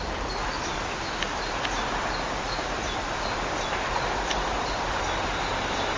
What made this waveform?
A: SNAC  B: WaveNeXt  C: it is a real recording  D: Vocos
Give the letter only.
C